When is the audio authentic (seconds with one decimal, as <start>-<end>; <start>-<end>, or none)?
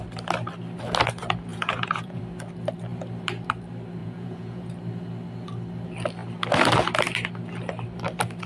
0.0-1.5; 2.2-4.0; 4.7-8.5